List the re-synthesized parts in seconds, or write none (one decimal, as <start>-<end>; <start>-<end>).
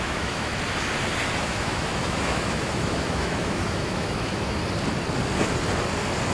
0.0-0.5; 1.4-4.6